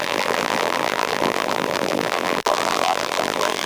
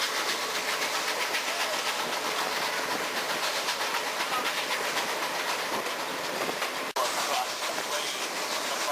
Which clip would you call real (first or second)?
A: second